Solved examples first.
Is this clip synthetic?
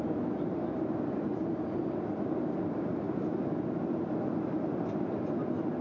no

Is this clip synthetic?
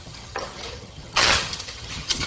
yes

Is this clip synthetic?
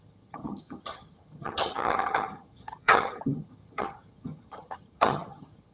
yes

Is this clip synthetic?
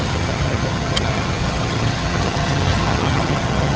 yes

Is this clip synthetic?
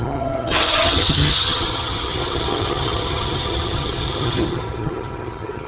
yes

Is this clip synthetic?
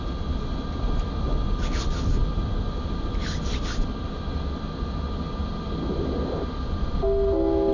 no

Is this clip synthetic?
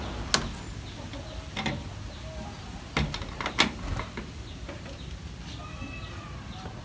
no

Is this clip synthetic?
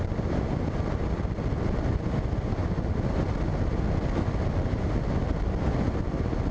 no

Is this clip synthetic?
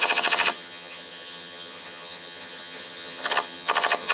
yes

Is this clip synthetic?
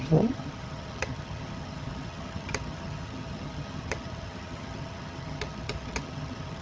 yes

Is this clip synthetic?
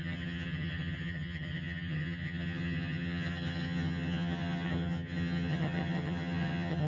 yes